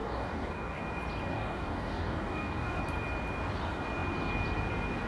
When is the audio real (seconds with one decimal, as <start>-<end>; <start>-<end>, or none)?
0.8-1.3; 2.8-5.1